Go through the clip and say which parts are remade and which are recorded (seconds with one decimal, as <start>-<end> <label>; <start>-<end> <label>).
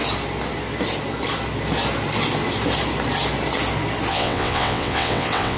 0.0-4.1 recorded; 4.1-5.6 remade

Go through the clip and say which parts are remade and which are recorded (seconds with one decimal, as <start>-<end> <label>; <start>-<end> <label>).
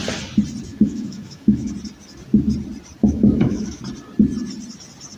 0.0-0.7 recorded; 0.7-1.7 remade; 1.7-3.0 recorded; 3.0-3.8 remade; 3.8-5.2 recorded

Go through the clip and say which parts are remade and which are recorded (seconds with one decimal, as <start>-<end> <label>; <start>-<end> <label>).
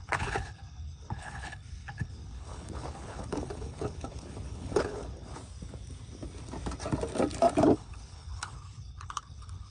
0.0-5.4 remade; 5.4-7.6 recorded; 7.6-9.7 remade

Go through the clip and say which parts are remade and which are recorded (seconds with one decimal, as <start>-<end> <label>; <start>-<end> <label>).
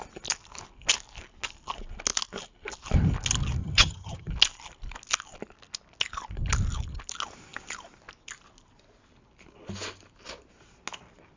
0.0-3.6 recorded; 3.6-4.3 remade; 4.3-11.4 recorded